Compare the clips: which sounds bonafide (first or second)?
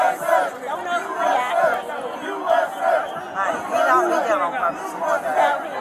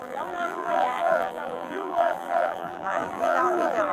first